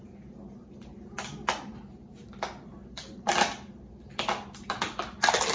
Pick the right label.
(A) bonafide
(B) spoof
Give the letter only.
A